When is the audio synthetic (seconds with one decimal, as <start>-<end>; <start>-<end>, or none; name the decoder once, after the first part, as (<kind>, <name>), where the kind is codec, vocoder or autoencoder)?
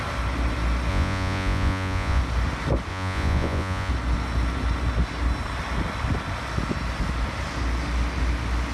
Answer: 0.9-2.2 (vocoder, Vocos); 2.9-3.9